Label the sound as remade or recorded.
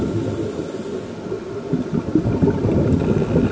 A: recorded